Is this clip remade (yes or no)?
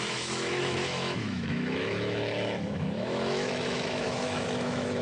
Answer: yes